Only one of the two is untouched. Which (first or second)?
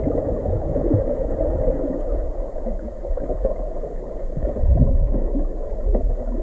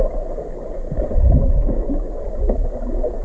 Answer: second